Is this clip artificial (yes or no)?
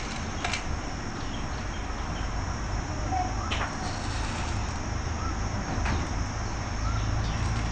no